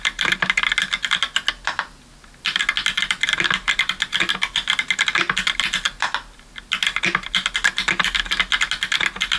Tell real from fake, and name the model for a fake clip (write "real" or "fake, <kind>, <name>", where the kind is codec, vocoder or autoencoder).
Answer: real